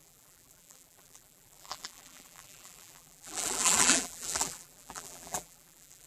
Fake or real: fake